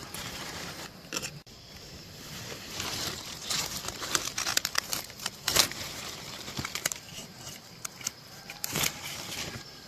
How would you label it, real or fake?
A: fake